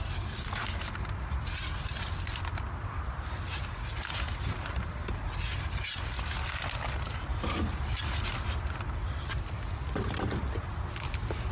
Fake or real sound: real